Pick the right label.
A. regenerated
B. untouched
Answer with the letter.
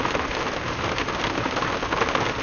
B